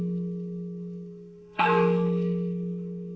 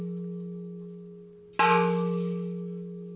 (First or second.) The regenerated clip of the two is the first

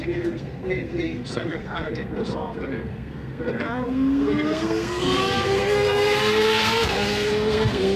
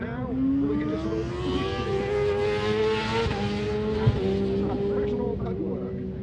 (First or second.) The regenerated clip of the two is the first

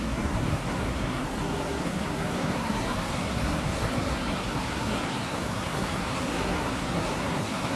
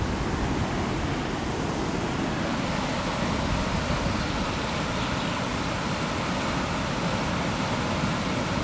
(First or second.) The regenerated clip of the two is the first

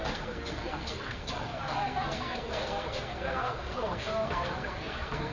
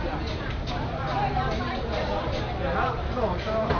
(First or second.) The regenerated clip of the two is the first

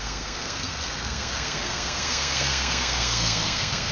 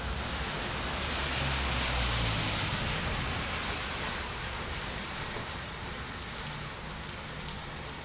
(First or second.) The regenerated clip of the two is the first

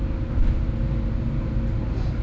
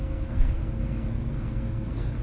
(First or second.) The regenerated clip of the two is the second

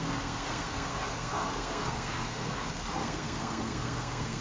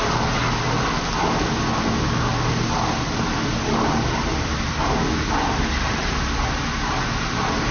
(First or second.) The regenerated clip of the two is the first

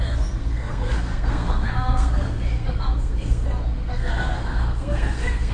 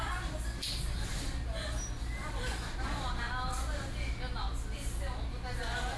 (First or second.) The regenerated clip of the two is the first